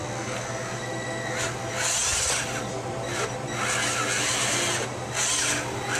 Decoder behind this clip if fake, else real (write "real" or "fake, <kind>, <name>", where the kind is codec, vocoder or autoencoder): real